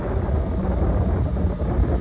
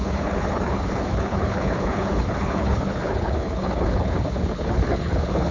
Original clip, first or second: first